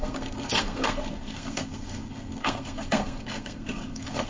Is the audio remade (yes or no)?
yes